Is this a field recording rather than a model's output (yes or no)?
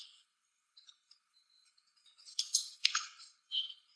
no